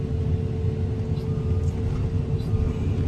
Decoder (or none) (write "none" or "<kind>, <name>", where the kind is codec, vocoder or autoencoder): none